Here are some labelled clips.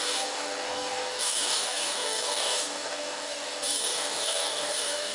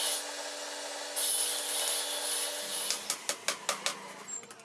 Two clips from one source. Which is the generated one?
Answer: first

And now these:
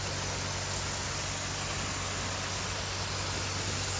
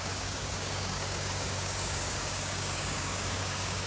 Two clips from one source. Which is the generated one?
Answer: second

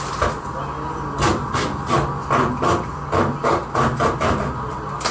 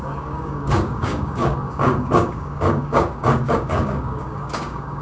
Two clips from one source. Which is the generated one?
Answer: second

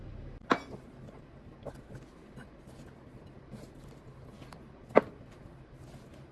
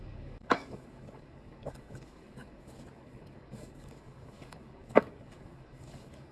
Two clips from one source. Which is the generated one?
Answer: second